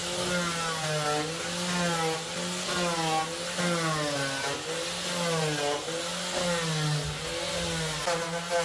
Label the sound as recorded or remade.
recorded